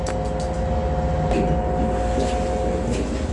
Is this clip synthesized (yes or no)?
no